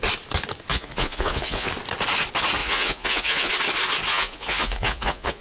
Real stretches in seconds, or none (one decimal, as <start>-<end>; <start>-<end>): 0.0-0.7; 1.7-2.6; 3.5-4.1